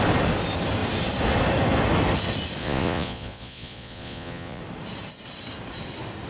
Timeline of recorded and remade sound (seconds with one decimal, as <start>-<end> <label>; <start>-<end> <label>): 0.0-2.6 recorded; 2.6-4.6 remade; 4.6-6.3 recorded